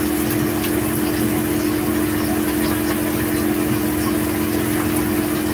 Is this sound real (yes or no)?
yes